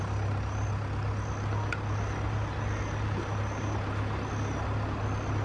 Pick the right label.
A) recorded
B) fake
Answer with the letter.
A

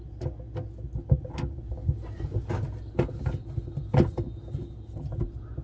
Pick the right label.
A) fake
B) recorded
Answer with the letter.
B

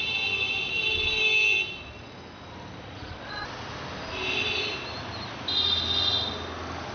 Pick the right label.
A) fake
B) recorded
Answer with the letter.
B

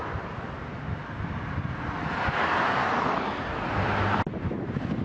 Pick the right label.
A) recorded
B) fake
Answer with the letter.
A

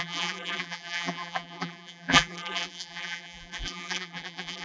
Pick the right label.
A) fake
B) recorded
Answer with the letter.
A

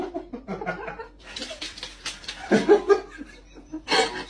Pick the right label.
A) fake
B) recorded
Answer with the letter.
B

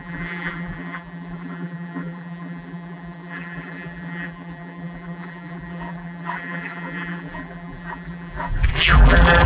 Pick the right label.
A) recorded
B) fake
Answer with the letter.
B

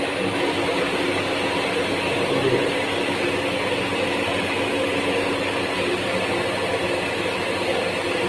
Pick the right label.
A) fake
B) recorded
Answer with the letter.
B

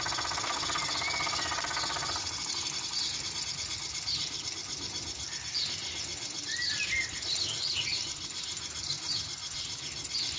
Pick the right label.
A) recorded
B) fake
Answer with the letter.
A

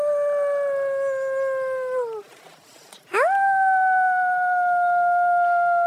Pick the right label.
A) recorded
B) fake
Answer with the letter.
A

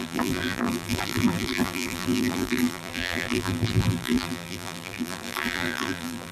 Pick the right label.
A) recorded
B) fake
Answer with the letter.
B